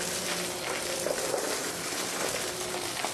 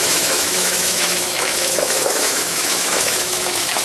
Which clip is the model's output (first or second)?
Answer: second